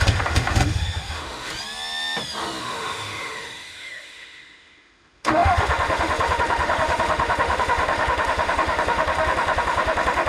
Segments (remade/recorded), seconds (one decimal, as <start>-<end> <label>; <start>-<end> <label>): 0.0-1.5 remade; 1.5-2.6 recorded; 2.6-10.3 remade